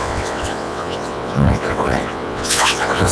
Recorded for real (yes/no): no